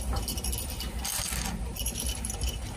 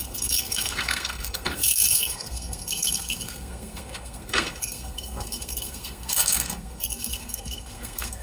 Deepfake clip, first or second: second